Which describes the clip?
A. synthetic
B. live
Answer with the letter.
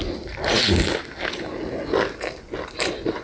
B